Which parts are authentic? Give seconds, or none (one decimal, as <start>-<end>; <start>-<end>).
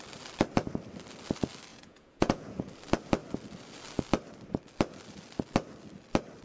0.0-1.7; 2.6-6.4